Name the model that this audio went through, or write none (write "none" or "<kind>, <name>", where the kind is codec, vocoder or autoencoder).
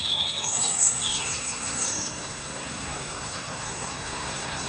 codec, SNAC